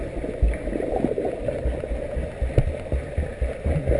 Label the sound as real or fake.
real